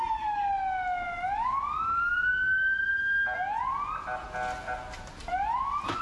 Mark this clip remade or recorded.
recorded